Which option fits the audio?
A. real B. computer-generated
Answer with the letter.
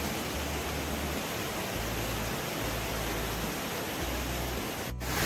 A